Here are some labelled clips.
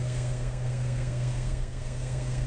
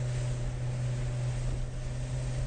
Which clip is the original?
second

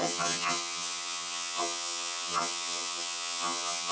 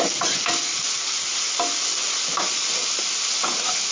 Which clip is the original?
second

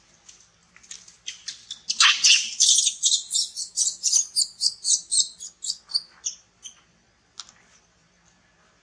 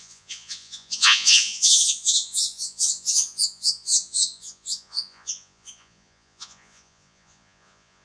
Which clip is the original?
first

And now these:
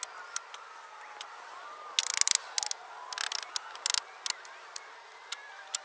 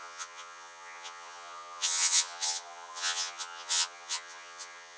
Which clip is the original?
first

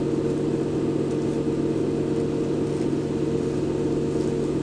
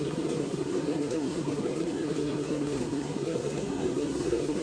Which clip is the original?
first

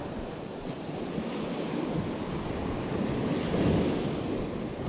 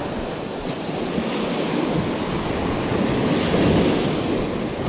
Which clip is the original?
second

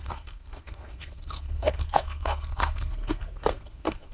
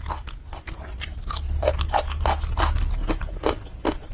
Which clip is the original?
second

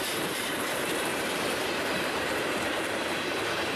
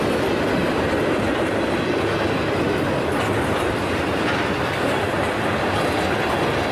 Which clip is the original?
second